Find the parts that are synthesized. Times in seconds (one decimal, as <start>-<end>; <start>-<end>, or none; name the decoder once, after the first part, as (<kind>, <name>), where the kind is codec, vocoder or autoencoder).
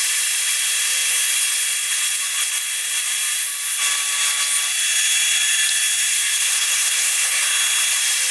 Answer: 6.1-7.4 (codec, SNAC)